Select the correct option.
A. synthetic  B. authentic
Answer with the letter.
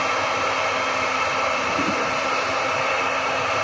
B